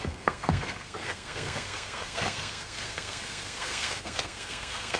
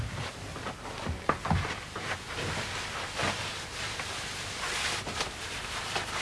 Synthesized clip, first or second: first